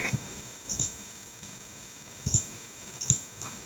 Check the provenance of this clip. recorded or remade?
remade